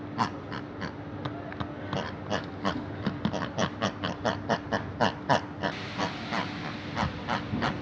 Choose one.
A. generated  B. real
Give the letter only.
B